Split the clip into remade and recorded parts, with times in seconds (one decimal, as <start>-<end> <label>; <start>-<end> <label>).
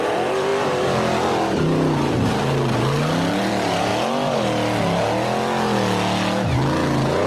0.0-3.9 remade; 3.9-7.3 recorded